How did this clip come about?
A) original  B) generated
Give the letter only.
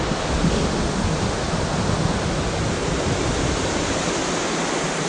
A